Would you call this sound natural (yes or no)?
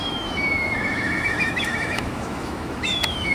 no